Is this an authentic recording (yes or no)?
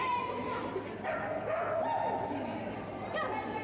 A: yes